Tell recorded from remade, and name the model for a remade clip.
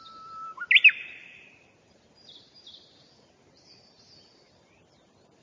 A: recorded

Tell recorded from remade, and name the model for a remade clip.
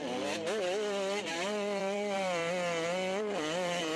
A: remade, vocoder, BigVGAN v2